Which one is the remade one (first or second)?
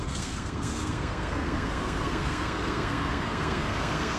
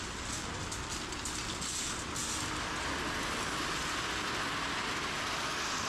first